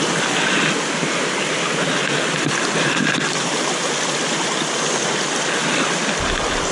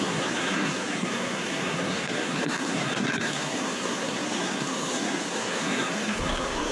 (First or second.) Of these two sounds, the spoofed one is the second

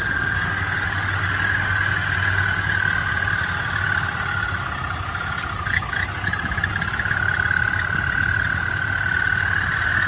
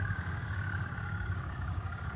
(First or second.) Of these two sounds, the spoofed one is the second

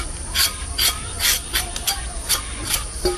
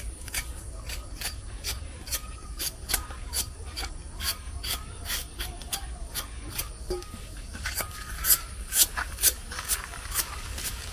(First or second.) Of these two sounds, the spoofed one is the second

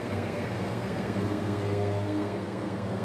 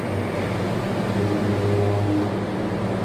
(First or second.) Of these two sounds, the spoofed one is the first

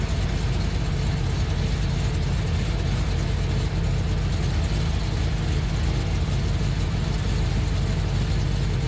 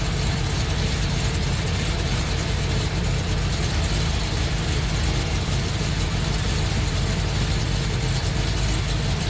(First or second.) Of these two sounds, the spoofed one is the second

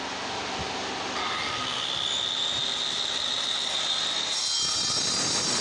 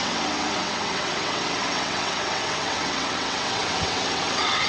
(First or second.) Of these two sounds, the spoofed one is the second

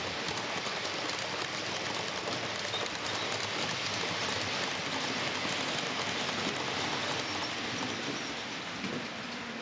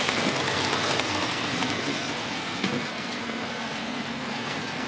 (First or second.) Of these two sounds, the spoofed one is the second